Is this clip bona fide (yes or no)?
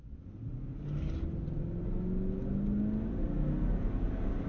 yes